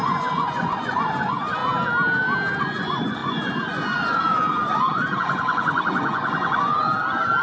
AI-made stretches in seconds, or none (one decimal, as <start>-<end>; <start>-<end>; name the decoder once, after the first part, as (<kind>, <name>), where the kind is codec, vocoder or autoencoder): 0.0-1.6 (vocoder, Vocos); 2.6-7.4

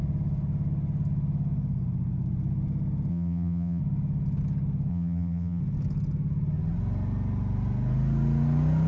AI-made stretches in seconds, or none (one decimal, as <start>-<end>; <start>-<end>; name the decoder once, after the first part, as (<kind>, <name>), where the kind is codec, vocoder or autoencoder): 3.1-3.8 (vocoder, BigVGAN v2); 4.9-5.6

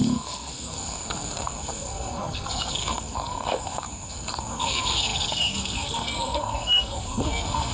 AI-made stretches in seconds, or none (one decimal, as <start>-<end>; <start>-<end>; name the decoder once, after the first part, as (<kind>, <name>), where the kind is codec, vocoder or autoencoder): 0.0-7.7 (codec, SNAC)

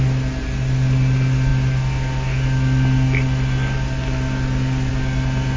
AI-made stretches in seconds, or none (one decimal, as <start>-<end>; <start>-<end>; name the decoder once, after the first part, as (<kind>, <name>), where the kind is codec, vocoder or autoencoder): none

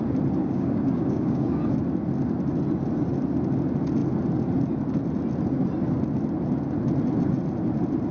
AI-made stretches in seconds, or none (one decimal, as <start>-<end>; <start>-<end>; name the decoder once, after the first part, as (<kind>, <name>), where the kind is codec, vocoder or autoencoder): 0.4-1.6 (codec, DAC)

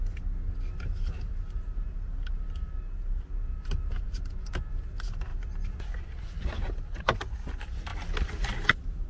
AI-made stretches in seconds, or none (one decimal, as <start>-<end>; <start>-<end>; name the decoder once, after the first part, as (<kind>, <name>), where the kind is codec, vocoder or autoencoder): none

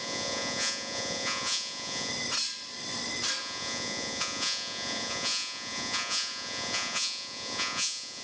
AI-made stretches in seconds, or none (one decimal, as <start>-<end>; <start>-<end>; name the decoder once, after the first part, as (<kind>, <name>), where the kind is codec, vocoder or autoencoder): 0.0-2.1 (vocoder, Vocos); 3.4-8.2